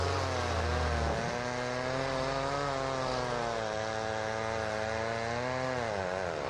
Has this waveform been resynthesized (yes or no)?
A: no